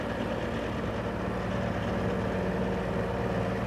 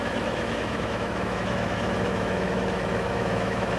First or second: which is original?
first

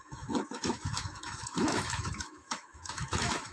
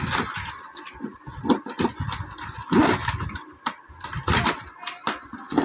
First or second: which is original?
second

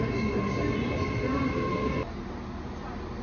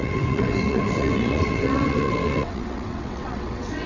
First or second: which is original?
first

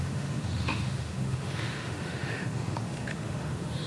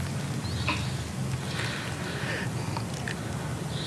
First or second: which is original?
second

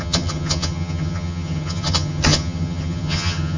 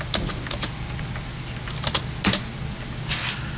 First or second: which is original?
second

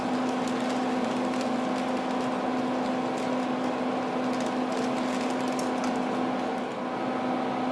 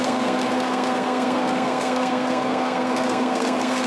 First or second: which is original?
first